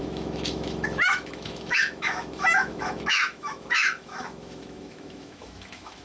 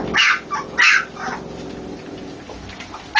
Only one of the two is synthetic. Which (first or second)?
first